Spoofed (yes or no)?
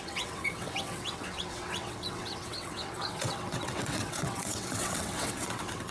yes